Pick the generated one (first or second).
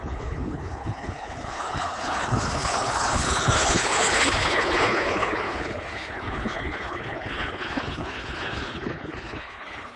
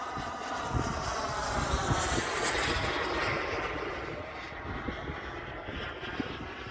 first